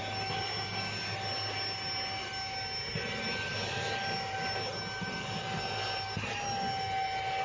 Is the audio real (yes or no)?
yes